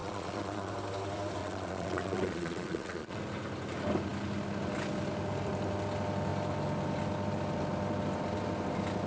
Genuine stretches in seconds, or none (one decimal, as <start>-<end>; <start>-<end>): 0.7-1.4; 3.2-9.1